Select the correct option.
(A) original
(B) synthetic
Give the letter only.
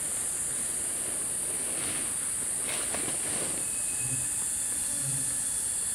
A